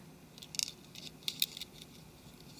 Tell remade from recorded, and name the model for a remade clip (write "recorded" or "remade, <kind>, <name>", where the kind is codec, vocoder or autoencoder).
recorded